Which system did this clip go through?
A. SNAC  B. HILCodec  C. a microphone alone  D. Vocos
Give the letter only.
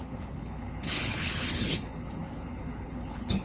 B